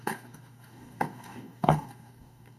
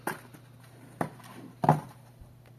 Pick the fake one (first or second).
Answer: first